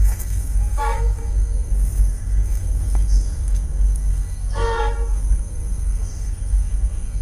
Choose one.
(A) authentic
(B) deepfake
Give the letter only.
B